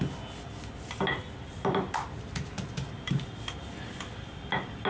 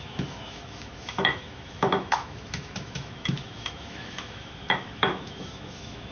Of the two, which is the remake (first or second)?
second